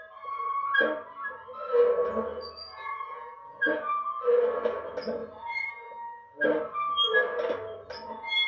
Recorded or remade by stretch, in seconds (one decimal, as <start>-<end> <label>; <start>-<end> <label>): 0.0-2.3 recorded; 2.3-3.9 remade; 3.9-5.2 recorded; 5.2-5.7 remade; 5.7-8.5 recorded